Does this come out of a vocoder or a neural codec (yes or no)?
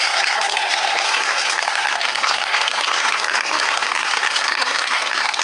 yes